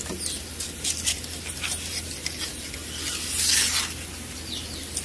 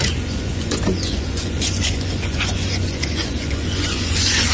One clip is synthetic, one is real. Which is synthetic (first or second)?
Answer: second